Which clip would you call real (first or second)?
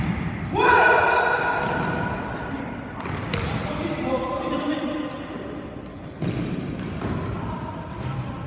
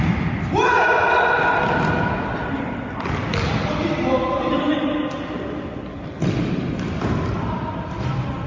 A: second